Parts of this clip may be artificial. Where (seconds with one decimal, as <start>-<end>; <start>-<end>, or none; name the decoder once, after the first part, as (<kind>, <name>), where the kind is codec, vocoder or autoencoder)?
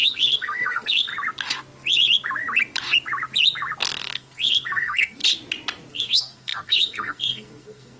0.0-1.1 (codec, SNAC); 4.0-5.2; 5.9-8.0